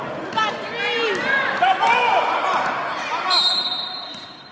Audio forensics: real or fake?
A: fake